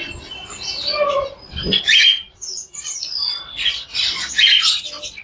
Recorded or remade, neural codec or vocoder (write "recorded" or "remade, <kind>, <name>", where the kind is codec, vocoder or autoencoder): remade, vocoder, BigVGAN v2